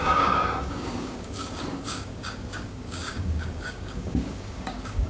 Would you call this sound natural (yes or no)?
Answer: no